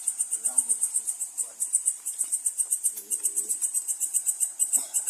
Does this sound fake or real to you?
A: fake